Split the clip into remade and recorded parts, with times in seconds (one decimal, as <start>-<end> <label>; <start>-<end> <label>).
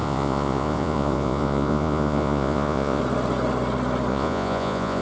0.0-3.0 remade; 3.0-4.1 recorded; 4.1-5.0 remade